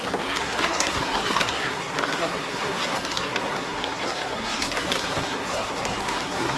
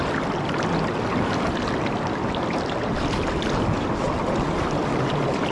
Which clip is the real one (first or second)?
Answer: second